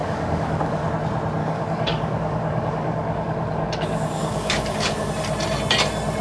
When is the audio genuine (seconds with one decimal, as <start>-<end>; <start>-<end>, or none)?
0.9-1.4; 5.1-6.2